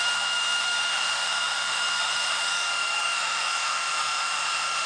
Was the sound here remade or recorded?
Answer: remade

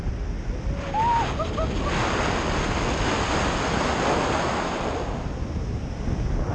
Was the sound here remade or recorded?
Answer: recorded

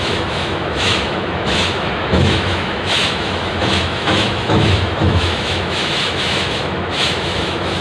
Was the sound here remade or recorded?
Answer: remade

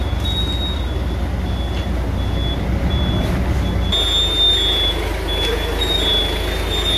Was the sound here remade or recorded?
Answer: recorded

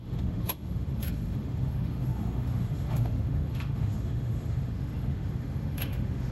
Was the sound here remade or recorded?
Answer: remade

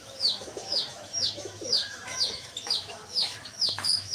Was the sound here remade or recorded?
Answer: remade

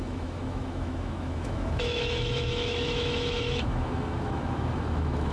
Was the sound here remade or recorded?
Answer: remade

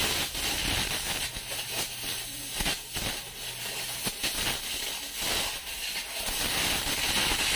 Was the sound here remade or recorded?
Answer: recorded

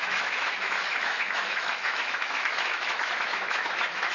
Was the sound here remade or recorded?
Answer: remade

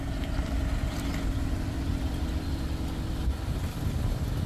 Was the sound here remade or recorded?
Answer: recorded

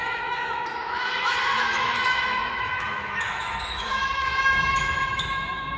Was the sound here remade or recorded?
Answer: remade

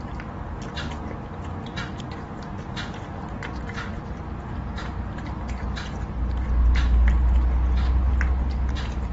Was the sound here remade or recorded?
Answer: recorded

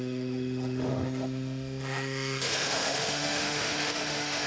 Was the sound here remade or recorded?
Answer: remade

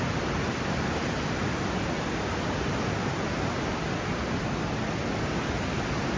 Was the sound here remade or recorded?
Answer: recorded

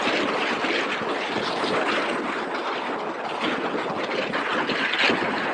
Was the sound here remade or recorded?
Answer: recorded